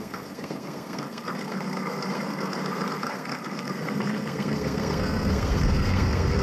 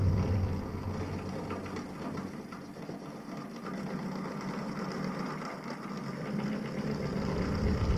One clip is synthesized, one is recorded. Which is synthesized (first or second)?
first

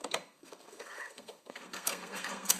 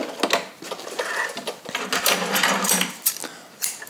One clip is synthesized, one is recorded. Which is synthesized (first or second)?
first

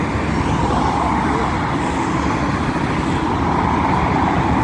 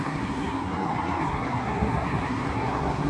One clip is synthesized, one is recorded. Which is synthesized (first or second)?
second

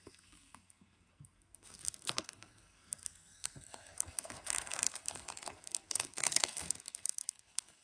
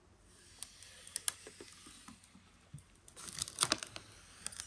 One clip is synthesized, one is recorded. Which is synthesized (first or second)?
first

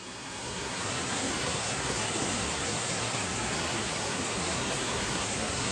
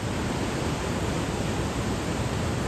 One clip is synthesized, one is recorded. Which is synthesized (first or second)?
first